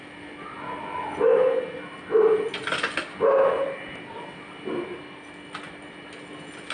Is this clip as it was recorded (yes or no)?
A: yes